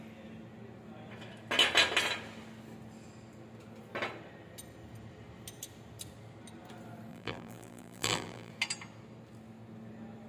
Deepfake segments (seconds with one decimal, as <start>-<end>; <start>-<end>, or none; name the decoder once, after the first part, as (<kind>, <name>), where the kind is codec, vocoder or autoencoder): 7.1-8.5 (vocoder, BigVGAN v2)